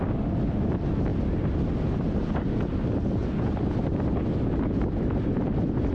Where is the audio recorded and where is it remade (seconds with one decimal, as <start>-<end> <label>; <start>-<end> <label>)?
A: 0.0-5.9 recorded